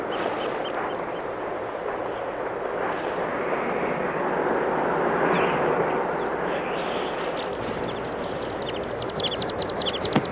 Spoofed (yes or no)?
no